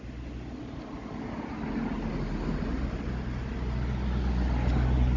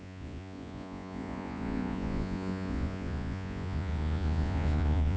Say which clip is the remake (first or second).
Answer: second